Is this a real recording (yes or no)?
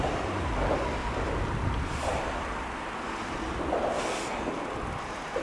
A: yes